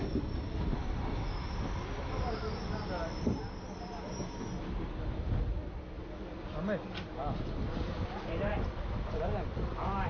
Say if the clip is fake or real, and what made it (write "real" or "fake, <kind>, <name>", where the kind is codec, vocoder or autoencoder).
real